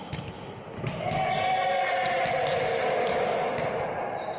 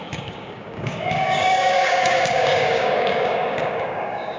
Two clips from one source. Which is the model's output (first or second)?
second